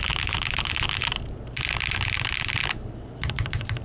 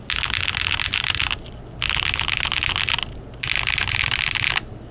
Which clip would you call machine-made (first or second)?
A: first